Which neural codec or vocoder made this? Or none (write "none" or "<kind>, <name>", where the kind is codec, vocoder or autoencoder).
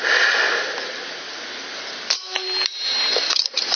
none